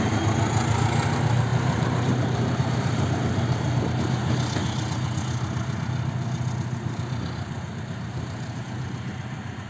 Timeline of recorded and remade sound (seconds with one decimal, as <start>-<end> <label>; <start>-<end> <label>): 0.0-1.5 recorded; 1.5-3.8 remade; 3.8-7.7 recorded; 7.7-8.6 remade; 8.6-9.7 recorded